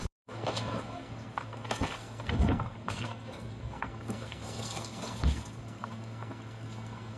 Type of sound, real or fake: fake